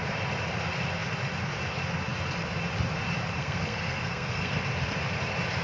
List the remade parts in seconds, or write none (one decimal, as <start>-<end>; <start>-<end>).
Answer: 3.4-4.6